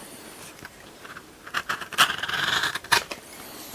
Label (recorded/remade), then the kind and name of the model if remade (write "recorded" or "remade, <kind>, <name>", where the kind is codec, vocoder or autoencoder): remade, vocoder, BigVGAN v2